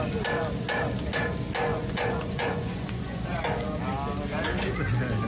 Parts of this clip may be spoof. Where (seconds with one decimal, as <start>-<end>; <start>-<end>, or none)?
1.7-3.4